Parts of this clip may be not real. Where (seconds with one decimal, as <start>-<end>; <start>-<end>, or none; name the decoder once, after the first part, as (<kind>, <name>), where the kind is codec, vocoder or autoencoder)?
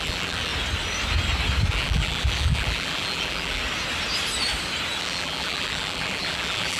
0.0-0.5 (vocoder, BigVGAN v2); 1.7-3.6; 5.0-6.8